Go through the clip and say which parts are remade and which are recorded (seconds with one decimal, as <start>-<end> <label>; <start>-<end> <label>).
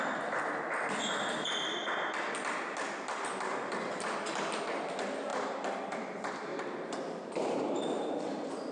0.0-6.5 recorded; 6.5-7.6 remade; 7.6-8.7 recorded